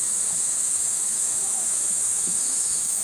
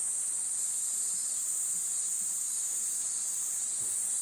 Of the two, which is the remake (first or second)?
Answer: first